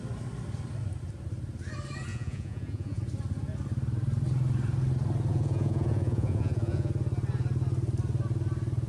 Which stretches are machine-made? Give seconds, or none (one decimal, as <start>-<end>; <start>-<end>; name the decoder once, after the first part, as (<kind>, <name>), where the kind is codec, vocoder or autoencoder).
2.1-3.0 (vocoder, Vocos); 5.3-6.9